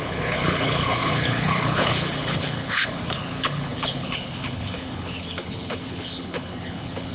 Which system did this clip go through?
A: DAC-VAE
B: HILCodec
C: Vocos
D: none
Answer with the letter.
B